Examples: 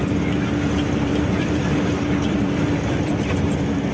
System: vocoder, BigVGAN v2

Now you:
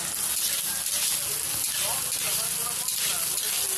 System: none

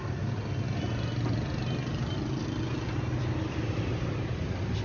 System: none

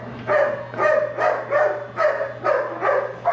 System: none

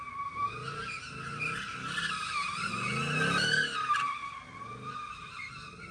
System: none